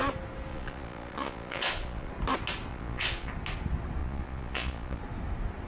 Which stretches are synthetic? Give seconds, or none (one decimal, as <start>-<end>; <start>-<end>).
0.5-2.1; 2.7-3.3; 4.0-5.0